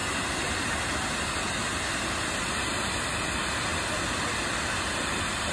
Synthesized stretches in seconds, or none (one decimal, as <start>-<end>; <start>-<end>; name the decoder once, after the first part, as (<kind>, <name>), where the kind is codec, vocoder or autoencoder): none